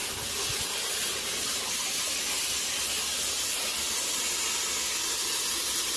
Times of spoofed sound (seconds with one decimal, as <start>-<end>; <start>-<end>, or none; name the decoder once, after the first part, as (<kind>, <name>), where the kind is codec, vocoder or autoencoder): none